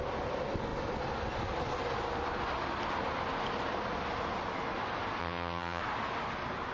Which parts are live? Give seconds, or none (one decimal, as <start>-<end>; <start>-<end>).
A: 0.0-5.2; 5.8-6.7